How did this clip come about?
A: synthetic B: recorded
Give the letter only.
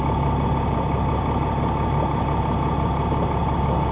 B